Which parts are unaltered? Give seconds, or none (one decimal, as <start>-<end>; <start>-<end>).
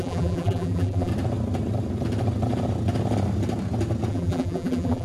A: 1.1-4.1